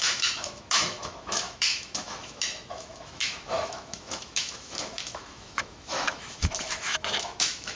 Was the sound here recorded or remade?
remade